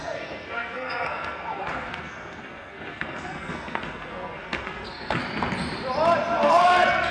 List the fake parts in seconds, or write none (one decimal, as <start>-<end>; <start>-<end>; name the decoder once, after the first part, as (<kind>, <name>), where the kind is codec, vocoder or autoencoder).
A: 0.0-5.2 (codec, SNAC); 6.4-7.1